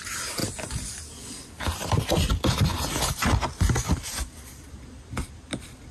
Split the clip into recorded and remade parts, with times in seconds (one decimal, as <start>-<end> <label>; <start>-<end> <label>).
0.0-5.9 recorded

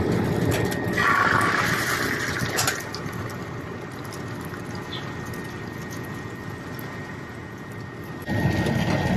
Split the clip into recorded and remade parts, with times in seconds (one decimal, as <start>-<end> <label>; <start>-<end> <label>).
0.0-5.8 recorded; 5.8-6.3 remade; 6.3-7.0 recorded; 7.0-7.7 remade; 7.7-9.2 recorded

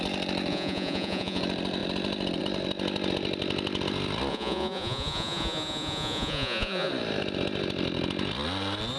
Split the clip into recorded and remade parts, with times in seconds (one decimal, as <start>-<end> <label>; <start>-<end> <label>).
0.0-0.5 recorded; 0.5-1.4 remade; 1.4-4.3 recorded; 4.3-6.9 remade; 6.9-9.0 recorded